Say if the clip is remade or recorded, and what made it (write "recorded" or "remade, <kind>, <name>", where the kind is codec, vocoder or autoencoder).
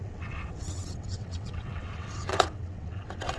remade, vocoder, WaveNeXt